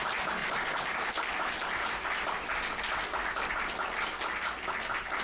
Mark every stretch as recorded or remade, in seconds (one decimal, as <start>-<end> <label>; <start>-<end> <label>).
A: 0.0-0.4 remade; 0.4-3.5 recorded; 3.5-5.2 remade